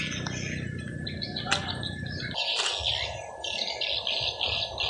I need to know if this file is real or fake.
real